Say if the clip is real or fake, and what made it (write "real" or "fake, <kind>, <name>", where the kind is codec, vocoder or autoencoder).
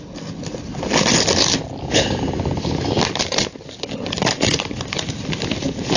real